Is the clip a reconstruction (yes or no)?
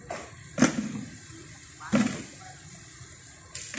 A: no